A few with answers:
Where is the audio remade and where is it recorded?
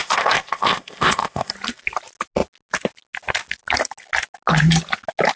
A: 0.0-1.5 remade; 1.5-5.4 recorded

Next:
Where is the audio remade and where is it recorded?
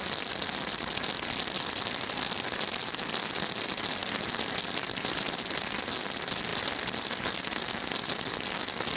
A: 0.0-9.0 recorded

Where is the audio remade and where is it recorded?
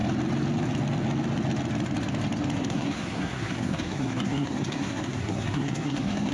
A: 0.0-2.6 recorded; 2.6-6.3 remade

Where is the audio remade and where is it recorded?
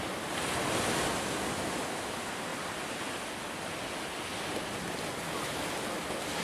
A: 0.0-6.4 recorded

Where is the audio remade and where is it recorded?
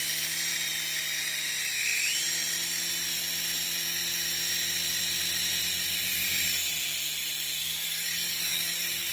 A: 0.0-7.6 recorded; 7.6-9.1 remade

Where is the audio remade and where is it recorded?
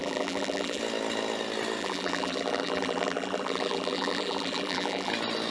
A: 0.0-0.8 remade; 0.8-1.8 recorded; 1.8-5.1 remade; 5.1-5.5 recorded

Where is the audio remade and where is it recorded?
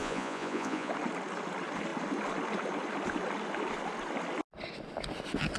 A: 0.0-0.9 remade; 0.9-5.6 recorded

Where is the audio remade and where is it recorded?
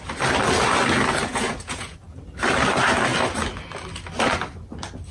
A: 0.0-1.3 recorded; 1.3-2.0 remade; 2.0-5.1 recorded